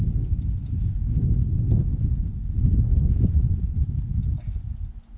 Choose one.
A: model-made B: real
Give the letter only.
B